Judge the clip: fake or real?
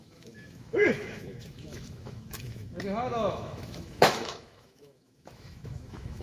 fake